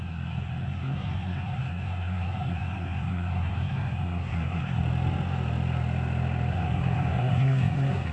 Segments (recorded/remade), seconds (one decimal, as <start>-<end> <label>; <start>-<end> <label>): 0.0-4.8 remade; 4.8-6.5 recorded; 6.5-8.1 remade